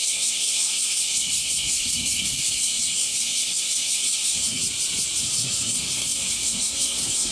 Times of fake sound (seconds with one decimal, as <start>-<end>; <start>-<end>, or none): 0.0-4.6; 5.2-7.3